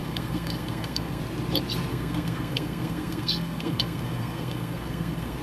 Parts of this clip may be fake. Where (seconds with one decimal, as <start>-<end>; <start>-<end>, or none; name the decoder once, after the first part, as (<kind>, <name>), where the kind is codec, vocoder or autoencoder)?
0.0-1.2 (codec, SNAC); 1.9-5.4